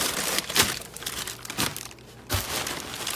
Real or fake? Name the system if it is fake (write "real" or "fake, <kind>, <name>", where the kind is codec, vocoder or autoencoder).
real